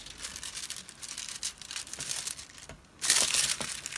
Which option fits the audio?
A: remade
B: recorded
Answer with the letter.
A